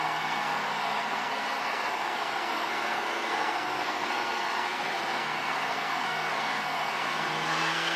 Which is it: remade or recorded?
remade